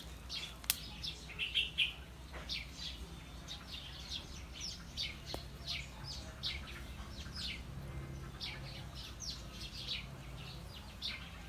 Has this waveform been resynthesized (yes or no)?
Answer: no